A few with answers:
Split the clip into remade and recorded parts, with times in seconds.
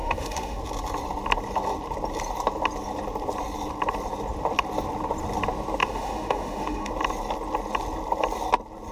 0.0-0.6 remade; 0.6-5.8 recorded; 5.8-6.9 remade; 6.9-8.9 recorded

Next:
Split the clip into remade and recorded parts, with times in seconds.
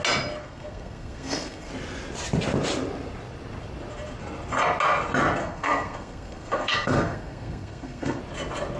0.0-0.4 recorded; 0.4-1.7 remade; 1.7-5.4 recorded; 5.4-8.2 remade; 8.2-8.8 recorded